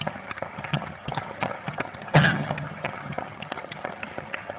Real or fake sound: fake